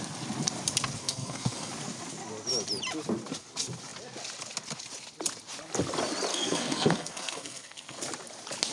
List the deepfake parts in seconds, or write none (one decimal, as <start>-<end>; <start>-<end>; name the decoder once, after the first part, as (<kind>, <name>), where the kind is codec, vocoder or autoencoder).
1.0-1.7 (codec, SNAC); 6.3-8.0